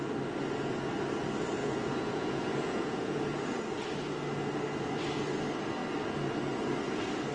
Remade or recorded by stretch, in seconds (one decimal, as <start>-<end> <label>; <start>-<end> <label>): 0.0-1.6 recorded; 1.6-3.2 remade; 3.2-7.3 recorded